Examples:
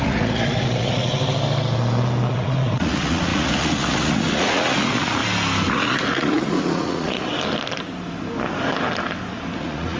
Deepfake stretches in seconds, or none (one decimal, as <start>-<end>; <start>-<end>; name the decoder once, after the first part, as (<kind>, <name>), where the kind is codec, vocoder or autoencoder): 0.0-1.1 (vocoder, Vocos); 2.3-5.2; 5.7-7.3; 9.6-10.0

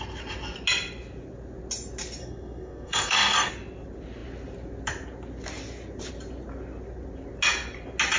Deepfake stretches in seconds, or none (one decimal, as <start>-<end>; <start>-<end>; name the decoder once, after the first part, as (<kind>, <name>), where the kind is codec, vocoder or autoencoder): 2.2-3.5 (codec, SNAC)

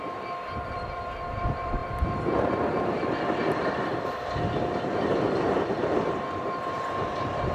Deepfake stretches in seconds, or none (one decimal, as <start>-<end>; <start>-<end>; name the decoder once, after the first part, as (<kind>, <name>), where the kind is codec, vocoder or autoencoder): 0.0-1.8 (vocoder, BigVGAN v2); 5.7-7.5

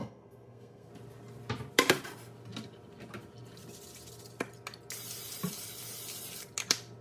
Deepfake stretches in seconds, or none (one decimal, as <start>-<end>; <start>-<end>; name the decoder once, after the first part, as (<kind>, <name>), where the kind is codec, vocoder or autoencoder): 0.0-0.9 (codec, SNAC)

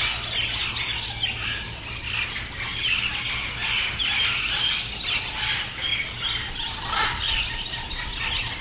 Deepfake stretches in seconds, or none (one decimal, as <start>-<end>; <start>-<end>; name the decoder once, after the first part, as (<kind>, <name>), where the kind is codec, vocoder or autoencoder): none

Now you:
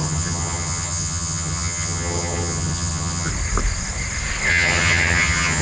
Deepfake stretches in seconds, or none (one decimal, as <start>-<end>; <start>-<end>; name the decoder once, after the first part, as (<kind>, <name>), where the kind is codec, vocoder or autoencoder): 0.0-3.3 (vocoder, HiFi-GAN); 4.5-5.6

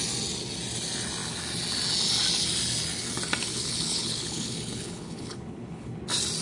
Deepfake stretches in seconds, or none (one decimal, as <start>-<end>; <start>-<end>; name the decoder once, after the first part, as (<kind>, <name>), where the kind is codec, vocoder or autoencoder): 3.5-6.0 (codec, HILCodec)

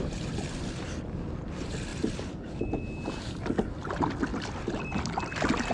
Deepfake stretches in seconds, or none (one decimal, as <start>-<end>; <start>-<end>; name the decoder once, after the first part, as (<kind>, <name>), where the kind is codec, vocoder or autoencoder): none